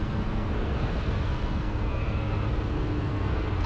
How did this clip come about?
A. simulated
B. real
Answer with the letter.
A